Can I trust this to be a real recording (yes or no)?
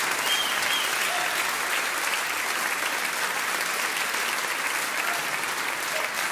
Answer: yes